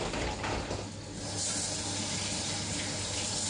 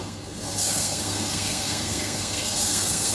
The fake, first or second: second